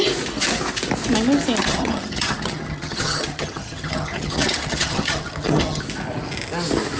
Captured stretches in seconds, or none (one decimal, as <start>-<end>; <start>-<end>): 0.0-1.6; 5.8-7.0